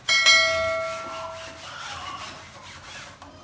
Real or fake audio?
real